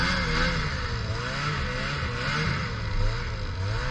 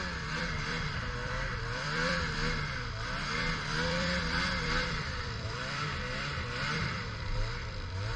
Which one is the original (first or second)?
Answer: first